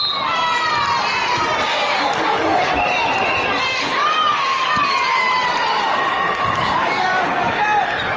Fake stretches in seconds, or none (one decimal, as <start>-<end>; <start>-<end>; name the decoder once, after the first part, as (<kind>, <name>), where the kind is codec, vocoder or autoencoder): 1.7-2.7 (codec, DAC); 3.7-5.3; 5.7-7.6